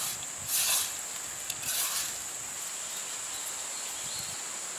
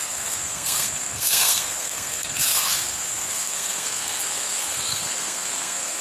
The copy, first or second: second